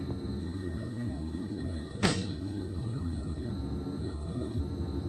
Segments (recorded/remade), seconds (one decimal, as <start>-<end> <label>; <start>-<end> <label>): 0.0-0.4 recorded; 0.4-3.5 remade; 3.5-4.0 recorded; 4.0-4.6 remade; 4.6-5.1 recorded